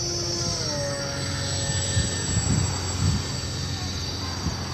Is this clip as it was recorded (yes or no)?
yes